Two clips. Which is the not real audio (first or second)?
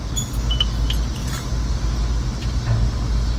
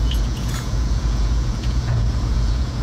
second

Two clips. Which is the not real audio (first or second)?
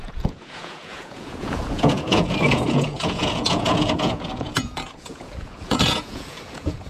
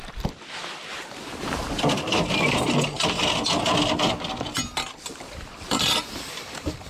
first